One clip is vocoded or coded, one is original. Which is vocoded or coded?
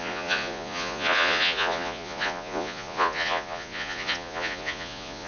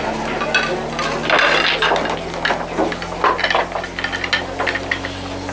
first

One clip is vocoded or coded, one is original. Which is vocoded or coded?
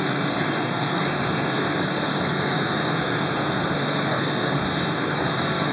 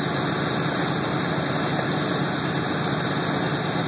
first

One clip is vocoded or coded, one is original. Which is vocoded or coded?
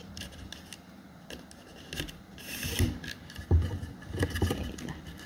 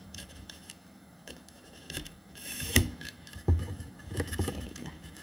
second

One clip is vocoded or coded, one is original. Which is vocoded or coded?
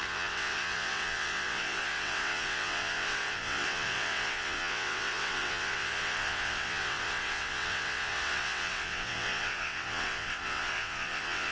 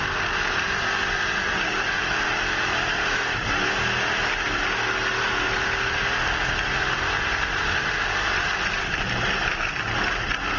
first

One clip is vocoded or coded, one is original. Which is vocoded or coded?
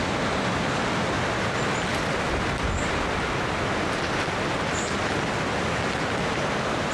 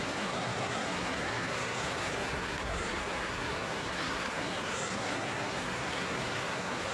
second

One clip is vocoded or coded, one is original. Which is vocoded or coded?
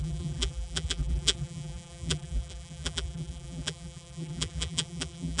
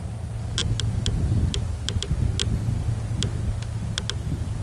first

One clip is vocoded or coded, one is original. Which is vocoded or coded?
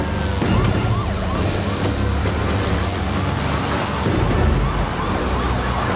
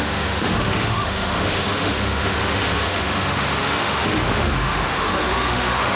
second